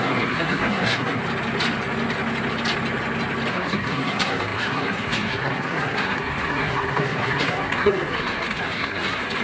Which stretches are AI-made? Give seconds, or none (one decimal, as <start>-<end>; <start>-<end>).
0.0-1.2; 3.5-9.4